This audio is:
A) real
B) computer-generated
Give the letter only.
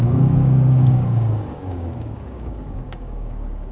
B